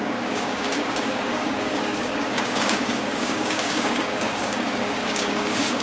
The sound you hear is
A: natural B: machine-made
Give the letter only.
B